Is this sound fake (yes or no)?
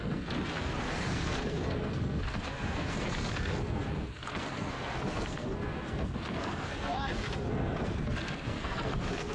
yes